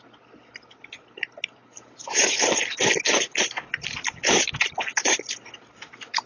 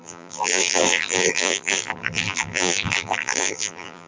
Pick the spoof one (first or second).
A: second